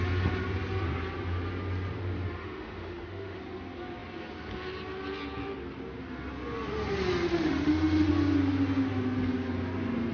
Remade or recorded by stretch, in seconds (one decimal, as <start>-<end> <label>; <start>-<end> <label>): 0.0-2.4 recorded; 2.4-3.4 remade; 3.4-7.3 recorded; 7.3-8.1 remade; 8.1-10.1 recorded